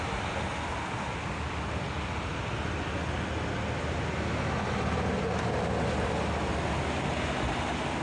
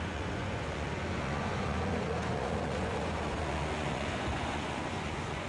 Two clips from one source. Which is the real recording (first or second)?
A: first